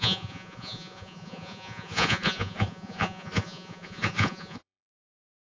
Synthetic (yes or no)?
yes